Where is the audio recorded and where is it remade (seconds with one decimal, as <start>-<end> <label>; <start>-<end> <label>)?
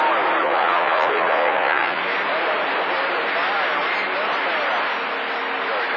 0.0-0.4 recorded; 0.4-2.0 remade; 2.0-6.0 recorded